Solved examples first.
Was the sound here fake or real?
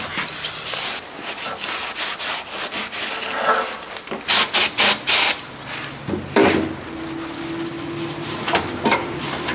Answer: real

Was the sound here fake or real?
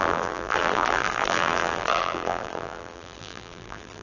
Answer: fake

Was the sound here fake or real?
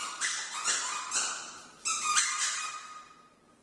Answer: fake